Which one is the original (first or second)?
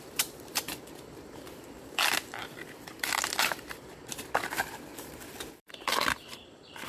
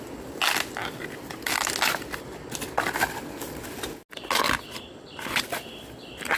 second